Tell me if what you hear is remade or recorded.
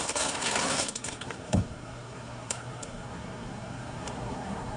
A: remade